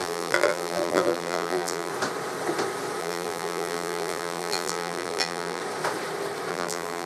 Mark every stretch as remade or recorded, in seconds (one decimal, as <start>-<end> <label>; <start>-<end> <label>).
0.0-1.9 remade; 1.9-3.0 recorded; 3.0-5.6 remade; 5.6-6.5 recorded; 6.5-7.1 remade